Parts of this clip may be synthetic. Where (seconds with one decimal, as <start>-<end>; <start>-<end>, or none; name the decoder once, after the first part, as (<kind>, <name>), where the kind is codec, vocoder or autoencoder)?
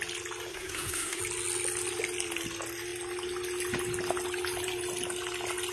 0.5-1.2 (codec, SNAC)